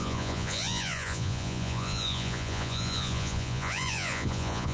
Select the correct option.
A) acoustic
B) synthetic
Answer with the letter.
B